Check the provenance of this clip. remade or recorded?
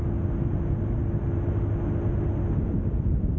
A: recorded